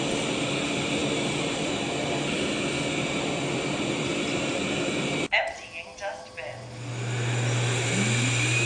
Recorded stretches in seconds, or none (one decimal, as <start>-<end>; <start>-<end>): 0.0-8.7